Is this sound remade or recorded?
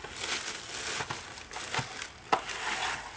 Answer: recorded